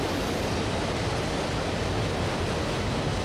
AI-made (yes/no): no